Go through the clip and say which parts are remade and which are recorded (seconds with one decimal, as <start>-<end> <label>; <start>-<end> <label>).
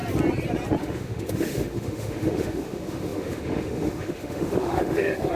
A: 0.0-0.8 recorded; 0.8-5.4 remade